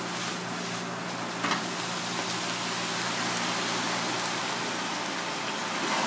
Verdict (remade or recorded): recorded